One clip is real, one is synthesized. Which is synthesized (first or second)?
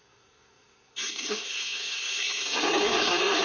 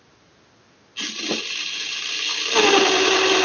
first